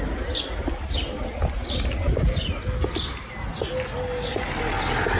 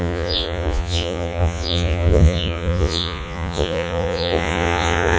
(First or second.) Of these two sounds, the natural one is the first